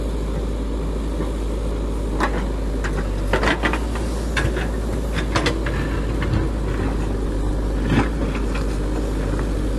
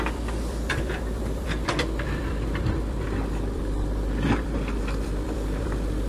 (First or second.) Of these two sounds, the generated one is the second